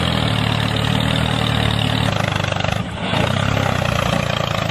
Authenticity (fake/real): real